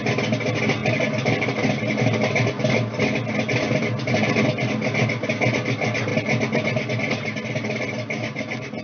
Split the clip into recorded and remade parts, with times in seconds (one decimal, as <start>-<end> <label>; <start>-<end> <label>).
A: 0.0-8.8 recorded